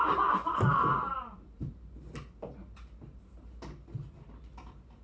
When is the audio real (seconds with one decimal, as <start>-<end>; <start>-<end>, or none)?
0.0-5.0